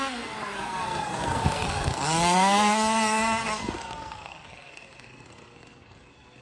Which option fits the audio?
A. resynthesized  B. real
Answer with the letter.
A